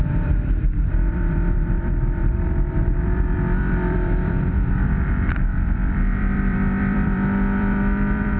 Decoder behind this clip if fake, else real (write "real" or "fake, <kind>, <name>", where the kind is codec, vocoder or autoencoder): fake, vocoder, BigVGAN v2